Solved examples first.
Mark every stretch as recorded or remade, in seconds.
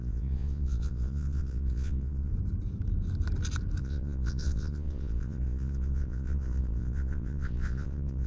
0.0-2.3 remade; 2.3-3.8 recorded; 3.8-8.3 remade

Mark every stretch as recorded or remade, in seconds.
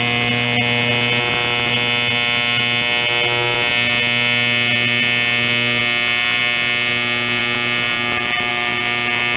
0.0-9.4 recorded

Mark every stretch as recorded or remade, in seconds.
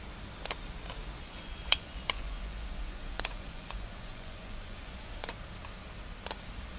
0.0-1.2 recorded; 1.2-5.3 remade; 5.3-6.8 recorded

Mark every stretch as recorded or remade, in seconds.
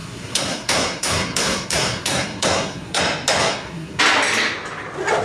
0.0-3.0 remade; 3.0-3.4 recorded; 3.4-4.0 remade; 4.0-5.2 recorded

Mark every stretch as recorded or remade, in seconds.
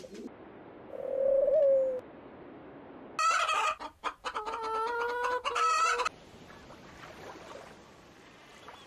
0.0-8.9 recorded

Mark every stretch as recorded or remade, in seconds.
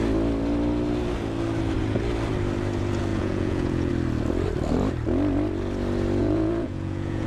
0.0-3.1 recorded; 3.1-3.9 remade; 3.9-6.2 recorded; 6.2-7.3 remade